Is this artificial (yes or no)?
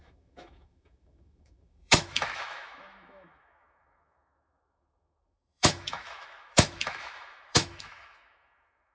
yes